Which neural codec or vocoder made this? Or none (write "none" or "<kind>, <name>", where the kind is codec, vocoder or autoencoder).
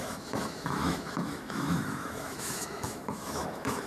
autoencoder, DAC-VAE